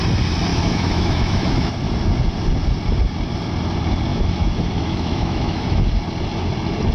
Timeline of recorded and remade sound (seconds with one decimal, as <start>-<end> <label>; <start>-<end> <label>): 0.0-0.5 recorded; 0.5-1.7 remade; 1.7-4.1 recorded; 4.1-5.9 remade; 5.9-6.9 recorded